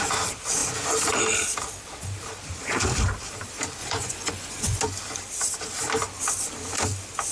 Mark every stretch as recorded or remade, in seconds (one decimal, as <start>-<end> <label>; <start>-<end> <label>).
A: 0.0-3.8 recorded; 3.8-4.8 remade; 4.8-7.3 recorded